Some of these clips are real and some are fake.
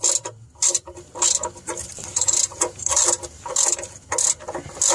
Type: real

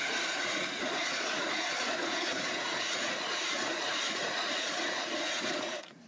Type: fake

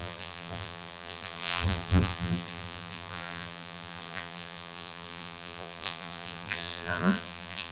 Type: fake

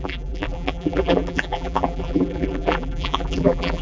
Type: fake